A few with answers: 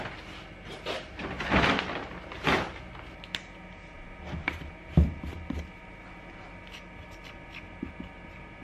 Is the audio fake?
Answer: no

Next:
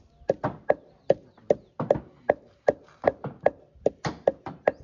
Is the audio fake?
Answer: no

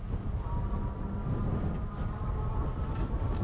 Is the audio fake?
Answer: no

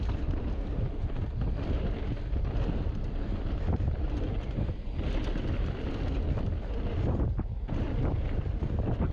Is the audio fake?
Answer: no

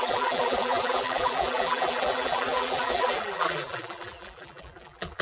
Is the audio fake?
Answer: yes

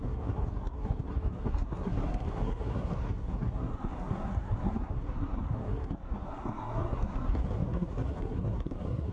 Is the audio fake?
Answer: yes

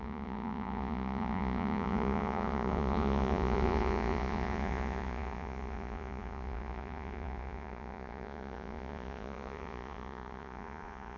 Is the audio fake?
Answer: yes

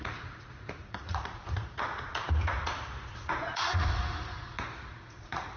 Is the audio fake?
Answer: yes